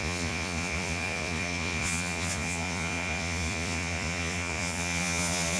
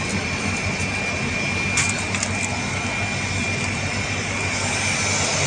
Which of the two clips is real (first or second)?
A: second